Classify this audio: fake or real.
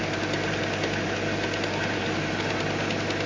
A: real